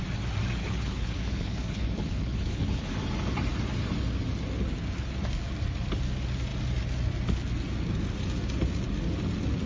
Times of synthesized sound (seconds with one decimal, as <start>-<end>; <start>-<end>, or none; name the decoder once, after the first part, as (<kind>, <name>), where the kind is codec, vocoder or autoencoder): 0.6-2.9 (codec, HILCodec)